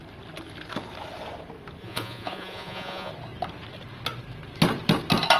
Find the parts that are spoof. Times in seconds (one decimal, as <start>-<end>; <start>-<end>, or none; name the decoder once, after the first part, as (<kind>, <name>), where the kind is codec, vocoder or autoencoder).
1.8-3.1 (vocoder, Vocos)